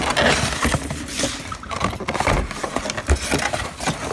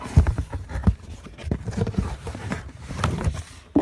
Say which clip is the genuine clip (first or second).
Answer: first